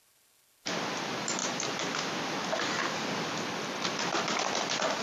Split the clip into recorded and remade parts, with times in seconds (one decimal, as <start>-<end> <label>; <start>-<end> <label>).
0.0-5.0 recorded

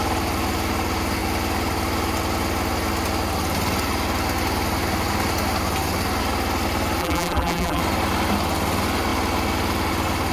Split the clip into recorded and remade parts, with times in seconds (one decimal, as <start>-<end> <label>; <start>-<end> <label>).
0.0-7.0 recorded; 7.0-7.8 remade; 7.8-10.3 recorded

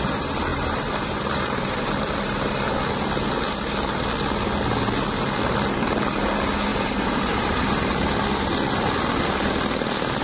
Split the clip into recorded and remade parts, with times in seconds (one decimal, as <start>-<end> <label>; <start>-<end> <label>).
0.0-0.5 recorded; 0.5-2.8 remade; 2.8-6.7 recorded; 6.7-7.9 remade; 7.9-10.2 recorded

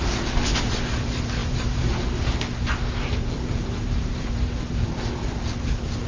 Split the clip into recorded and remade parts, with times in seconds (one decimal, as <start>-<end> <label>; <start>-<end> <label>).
0.0-1.4 recorded; 1.4-4.6 remade; 4.6-5.2 recorded; 5.2-6.1 remade

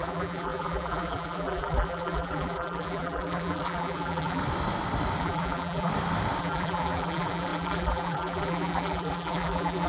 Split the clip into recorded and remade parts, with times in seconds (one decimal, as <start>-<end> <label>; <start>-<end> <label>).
0.0-4.4 remade; 4.4-5.2 recorded; 5.2-5.9 remade; 5.9-6.4 recorded; 6.4-9.9 remade

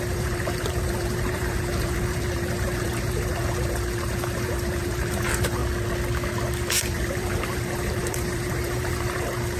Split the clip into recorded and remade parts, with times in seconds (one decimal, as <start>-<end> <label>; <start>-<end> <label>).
0.0-5.6 remade; 5.6-6.7 recorded; 6.7-9.6 remade

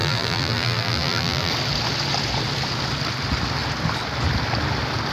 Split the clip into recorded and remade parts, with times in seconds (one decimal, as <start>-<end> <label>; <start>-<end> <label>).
0.0-1.5 remade; 1.5-5.1 recorded